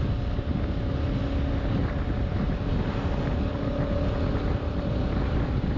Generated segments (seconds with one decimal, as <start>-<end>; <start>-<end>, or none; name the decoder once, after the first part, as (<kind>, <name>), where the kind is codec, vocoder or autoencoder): none